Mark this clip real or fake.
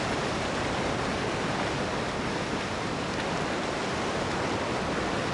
real